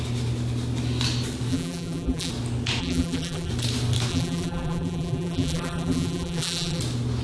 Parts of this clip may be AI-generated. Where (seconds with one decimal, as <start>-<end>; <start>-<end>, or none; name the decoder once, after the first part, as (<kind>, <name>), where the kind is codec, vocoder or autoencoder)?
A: 1.5-2.3 (vocoder, BigVGAN v2); 2.8-3.5; 4.1-6.8